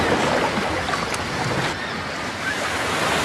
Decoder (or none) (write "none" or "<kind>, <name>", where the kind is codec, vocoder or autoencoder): none